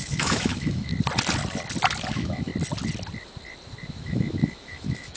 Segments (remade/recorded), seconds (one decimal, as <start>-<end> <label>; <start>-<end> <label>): 0.0-0.9 remade; 0.9-2.1 recorded; 2.1-2.5 remade; 2.5-3.9 recorded; 3.9-5.2 remade

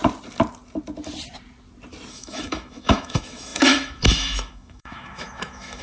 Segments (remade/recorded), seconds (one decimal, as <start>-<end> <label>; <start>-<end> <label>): 0.0-2.1 recorded; 2.1-5.8 remade

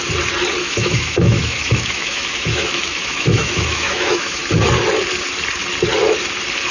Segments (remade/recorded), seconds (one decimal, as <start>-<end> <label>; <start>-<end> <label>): 0.0-0.6 recorded; 0.6-4.4 remade; 4.4-6.7 recorded

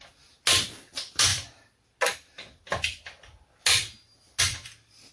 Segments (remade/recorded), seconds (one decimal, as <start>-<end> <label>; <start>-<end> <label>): 0.0-5.1 recorded

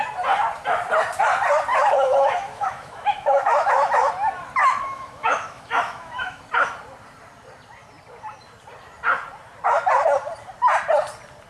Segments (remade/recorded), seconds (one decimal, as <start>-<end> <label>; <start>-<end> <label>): 0.0-1.7 recorded; 1.7-4.1 remade; 4.1-4.6 recorded; 4.6-6.4 remade; 6.4-11.5 recorded